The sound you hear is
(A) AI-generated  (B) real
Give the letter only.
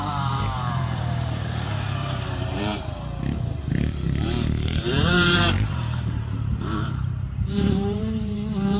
A